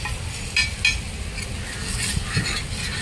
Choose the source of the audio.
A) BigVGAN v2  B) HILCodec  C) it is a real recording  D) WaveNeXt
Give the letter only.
C